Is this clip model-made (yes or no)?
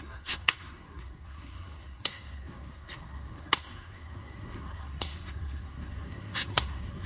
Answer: yes